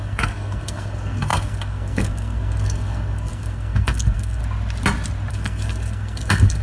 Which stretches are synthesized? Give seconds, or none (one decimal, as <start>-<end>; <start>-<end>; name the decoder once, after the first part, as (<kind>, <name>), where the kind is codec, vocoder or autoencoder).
0.0-4.4 (codec, SNAC); 5.3-6.6